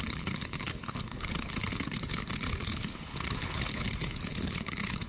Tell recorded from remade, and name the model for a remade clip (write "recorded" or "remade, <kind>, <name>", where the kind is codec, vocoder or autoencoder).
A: remade, codec, HILCodec